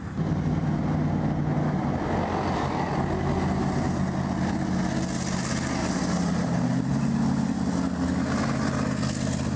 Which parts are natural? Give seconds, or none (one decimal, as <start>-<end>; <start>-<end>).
0.0-5.8; 6.9-9.6